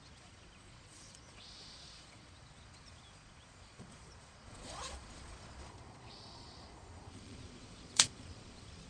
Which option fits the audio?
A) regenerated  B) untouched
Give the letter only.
A